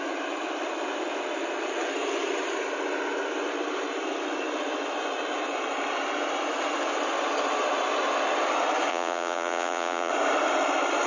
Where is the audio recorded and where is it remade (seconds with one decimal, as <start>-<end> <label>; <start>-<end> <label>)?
0.0-8.9 recorded; 8.9-10.1 remade; 10.1-11.1 recorded